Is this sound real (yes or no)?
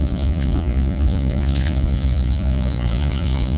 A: no